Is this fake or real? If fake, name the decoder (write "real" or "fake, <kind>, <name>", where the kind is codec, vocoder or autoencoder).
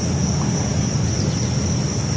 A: real